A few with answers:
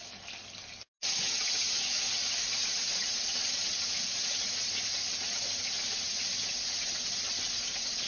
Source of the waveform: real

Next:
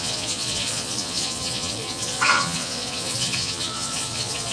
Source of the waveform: fake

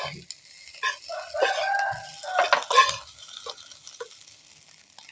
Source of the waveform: real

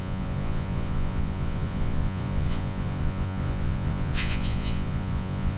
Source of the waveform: fake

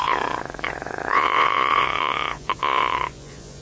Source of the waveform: fake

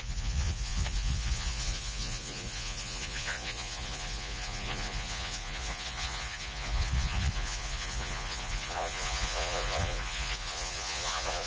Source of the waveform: fake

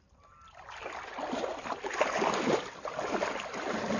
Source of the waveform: real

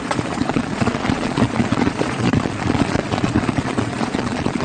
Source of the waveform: fake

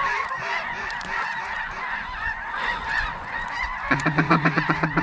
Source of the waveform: fake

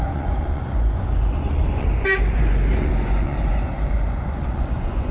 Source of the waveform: fake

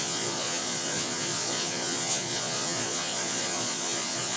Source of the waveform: fake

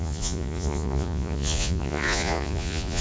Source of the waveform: fake